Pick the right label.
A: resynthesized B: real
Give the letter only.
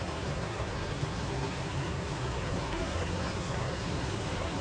A